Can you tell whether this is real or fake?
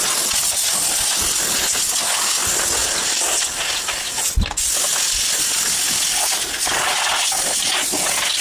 real